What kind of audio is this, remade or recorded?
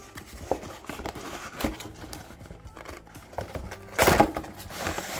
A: remade